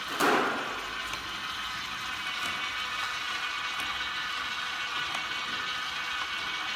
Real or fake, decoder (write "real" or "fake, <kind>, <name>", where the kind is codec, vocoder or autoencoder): real